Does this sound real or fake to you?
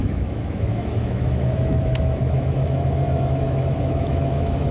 fake